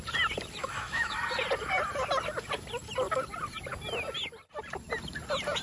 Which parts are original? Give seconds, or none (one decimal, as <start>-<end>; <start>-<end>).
0.0-0.6; 1.2-5.6